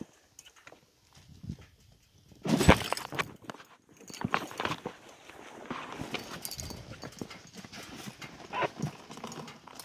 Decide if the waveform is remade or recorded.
recorded